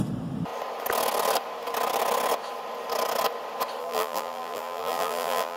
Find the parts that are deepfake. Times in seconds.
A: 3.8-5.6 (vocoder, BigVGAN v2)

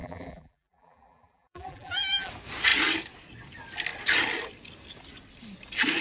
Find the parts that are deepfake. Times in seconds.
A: 0.0-2.3 (vocoder, BigVGAN v2)

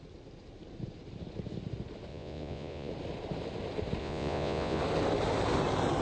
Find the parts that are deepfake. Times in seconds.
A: 2.1-2.9 (vocoder, Vocos); 4.0-4.8

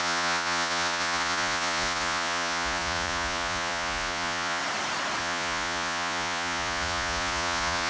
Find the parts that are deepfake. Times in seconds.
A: 0.0-4.6 (vocoder, Vocos); 5.2-7.9

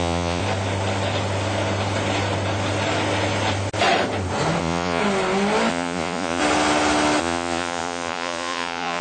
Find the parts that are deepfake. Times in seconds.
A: 0.0-0.4 (vocoder, Vocos); 4.6-5.0; 5.7-6.4; 7.2-9.0